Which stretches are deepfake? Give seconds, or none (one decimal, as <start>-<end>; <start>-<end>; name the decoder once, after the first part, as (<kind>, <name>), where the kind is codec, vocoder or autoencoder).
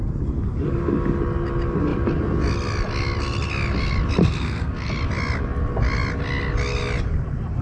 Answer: 4.2-4.9 (codec, SNAC)